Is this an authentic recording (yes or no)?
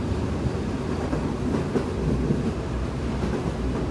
yes